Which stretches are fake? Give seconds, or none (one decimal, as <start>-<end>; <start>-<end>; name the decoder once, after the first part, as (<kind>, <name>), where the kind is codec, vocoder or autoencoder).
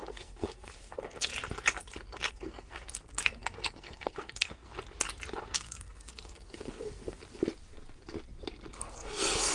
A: 0.0-1.3 (codec, SNAC); 2.3-4.7; 5.4-7.2; 8.7-9.5